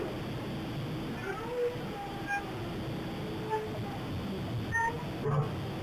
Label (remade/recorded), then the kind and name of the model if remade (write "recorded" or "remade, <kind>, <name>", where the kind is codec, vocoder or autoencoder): recorded